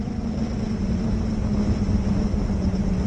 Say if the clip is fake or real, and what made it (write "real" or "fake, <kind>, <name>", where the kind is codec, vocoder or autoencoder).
real